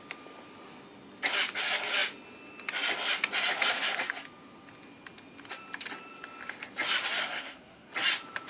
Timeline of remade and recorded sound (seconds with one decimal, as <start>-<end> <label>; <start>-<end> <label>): 0.0-7.2 recorded; 7.2-7.9 remade; 7.9-8.5 recorded